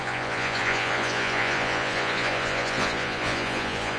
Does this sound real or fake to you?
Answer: fake